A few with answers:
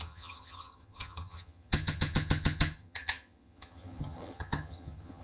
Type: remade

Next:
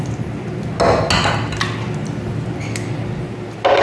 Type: recorded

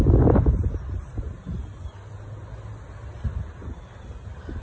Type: recorded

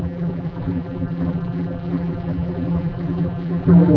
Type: remade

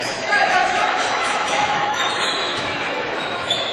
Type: remade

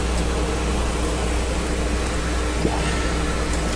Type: recorded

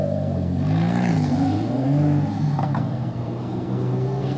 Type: remade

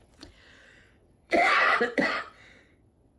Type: remade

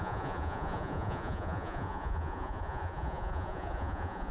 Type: remade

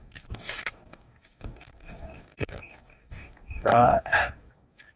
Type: remade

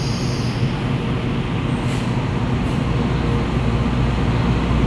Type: recorded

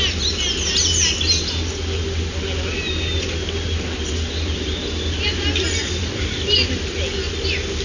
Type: recorded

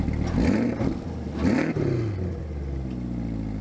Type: recorded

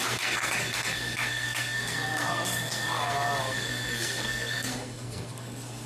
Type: remade